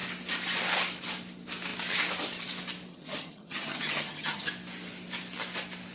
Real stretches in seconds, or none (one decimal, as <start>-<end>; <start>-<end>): 0.0-2.9; 4.5-5.9